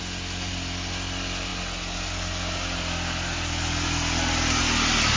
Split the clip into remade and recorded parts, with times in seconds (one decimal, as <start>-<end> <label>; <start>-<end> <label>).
0.0-5.2 recorded